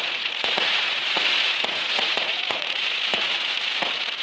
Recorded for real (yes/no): no